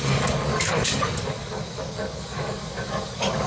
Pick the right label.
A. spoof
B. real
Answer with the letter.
A